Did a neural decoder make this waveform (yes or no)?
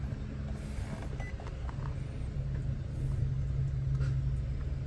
no